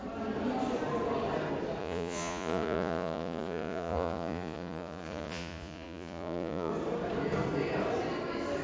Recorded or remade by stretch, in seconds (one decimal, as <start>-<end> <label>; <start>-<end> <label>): 0.0-1.8 recorded; 1.8-6.7 remade; 6.7-8.6 recorded